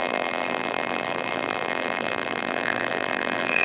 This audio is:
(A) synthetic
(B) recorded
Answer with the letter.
A